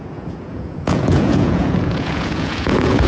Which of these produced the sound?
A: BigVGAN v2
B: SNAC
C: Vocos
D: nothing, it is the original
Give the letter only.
C